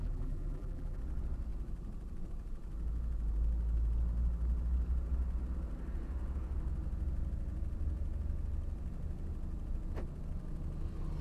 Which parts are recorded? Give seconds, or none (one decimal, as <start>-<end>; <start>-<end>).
1.0-11.2